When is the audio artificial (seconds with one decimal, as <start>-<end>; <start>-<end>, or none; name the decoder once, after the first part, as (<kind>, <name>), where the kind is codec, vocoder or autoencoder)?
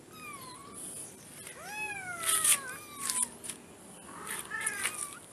none